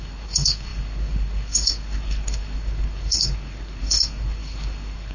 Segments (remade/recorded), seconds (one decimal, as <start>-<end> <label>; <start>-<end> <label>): 0.0-5.1 remade